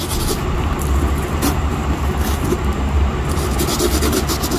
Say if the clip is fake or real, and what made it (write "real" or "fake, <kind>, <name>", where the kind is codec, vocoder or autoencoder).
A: real